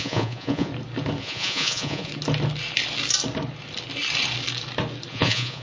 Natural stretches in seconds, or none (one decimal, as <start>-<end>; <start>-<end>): 0.7-1.2; 2.1-5.1